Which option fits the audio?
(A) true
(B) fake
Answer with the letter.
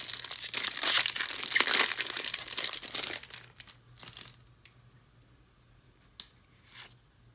A